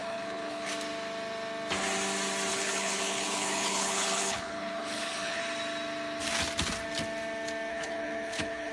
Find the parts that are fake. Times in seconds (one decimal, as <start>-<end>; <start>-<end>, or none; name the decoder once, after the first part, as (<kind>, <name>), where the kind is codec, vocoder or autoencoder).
0.0-0.7 (codec, HILCodec); 2.5-5.4; 7.7-8.7